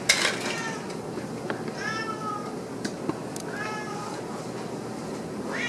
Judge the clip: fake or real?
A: real